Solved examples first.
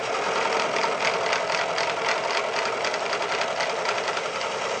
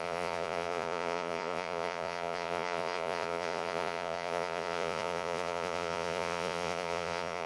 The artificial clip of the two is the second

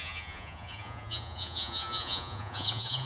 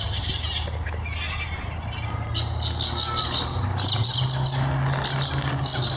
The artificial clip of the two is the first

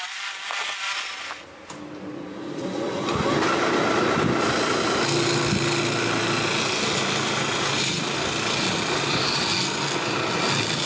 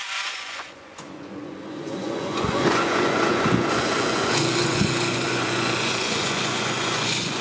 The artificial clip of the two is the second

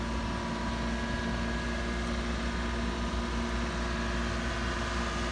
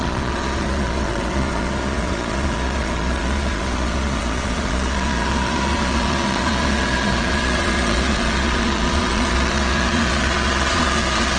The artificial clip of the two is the second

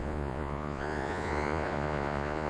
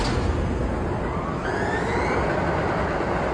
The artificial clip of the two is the first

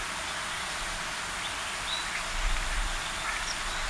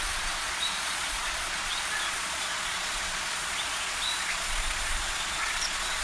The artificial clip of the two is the second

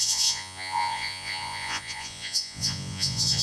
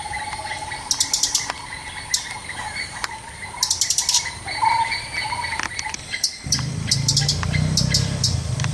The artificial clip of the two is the first